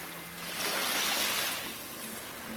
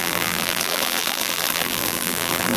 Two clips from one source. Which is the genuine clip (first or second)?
first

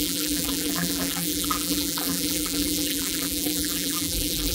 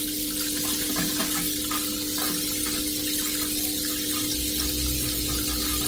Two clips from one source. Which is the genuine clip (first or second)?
second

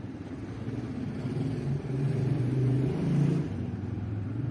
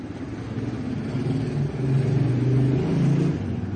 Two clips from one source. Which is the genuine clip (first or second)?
second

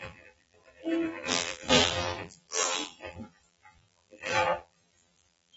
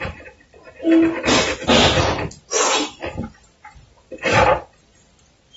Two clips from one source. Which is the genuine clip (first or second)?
second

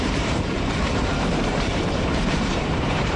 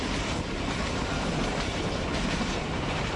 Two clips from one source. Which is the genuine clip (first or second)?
second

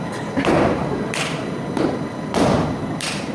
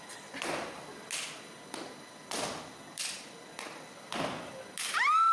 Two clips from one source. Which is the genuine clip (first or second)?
second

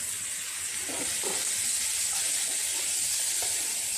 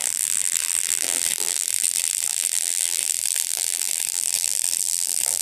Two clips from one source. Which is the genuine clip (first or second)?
first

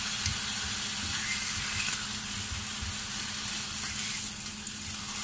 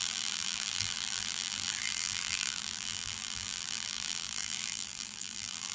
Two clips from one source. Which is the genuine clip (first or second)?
first